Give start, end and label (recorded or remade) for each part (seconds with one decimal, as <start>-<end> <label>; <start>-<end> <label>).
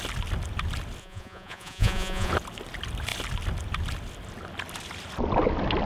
0.0-1.0 recorded; 1.0-2.3 remade; 2.3-5.8 recorded